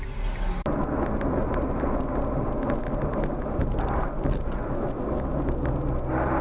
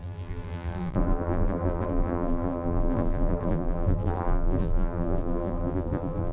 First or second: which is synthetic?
second